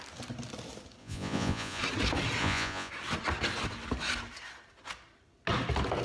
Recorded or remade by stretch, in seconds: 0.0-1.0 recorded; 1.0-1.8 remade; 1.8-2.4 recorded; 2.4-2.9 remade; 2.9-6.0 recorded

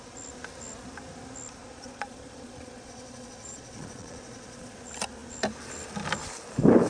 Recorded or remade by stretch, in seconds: 0.0-1.6 recorded; 1.6-4.8 remade; 4.8-6.9 recorded

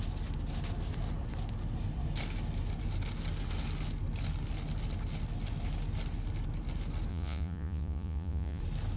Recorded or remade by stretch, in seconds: 0.0-7.1 recorded; 7.1-8.6 remade; 8.6-9.0 recorded

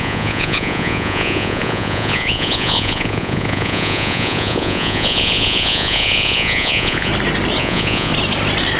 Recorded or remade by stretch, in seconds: 0.0-7.1 remade; 7.1-7.6 recorded; 7.6-8.1 remade; 8.1-8.8 recorded

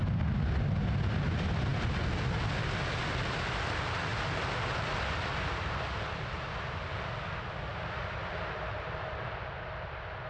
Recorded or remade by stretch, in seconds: 0.0-10.3 recorded

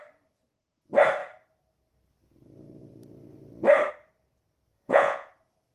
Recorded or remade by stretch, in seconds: 0.0-4.7 recorded; 4.7-5.3 remade; 5.3-5.7 recorded

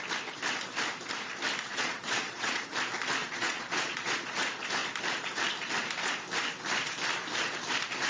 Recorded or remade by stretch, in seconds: 0.0-1.7 recorded; 1.7-2.6 remade; 2.6-3.2 recorded; 3.2-4.3 remade; 4.3-8.1 recorded

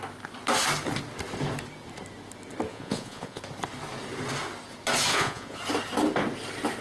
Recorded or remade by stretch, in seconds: 0.0-2.7 recorded; 2.7-3.4 remade; 3.4-5.1 recorded; 5.1-5.6 remade; 5.6-6.8 recorded